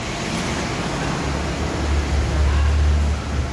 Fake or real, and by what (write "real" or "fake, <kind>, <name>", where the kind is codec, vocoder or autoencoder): real